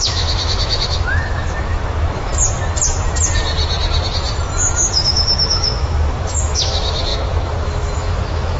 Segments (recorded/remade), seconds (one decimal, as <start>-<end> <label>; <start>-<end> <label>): 0.0-2.3 remade; 2.3-4.9 recorded; 4.9-8.6 remade